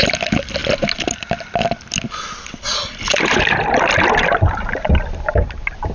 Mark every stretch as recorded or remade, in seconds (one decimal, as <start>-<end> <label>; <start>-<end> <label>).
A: 0.0-5.9 recorded